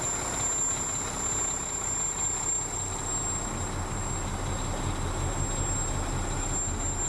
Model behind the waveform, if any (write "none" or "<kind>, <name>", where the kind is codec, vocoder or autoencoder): none